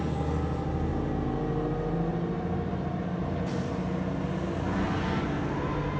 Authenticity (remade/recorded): recorded